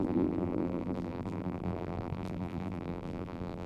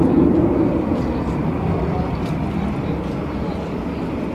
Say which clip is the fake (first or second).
first